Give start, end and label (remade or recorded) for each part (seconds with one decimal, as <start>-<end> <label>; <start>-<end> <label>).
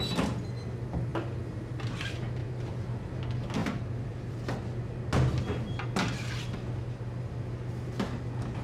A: 0.0-2.4 recorded; 2.4-3.2 remade; 3.2-3.6 recorded; 3.6-4.5 remade; 4.5-8.6 recorded